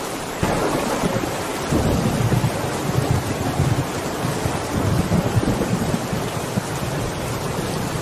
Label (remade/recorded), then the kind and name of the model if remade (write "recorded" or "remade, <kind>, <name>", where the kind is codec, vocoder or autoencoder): recorded